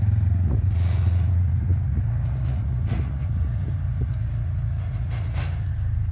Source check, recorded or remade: remade